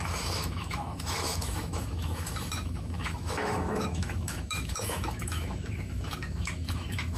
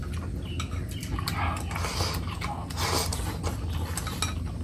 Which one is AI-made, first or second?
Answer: first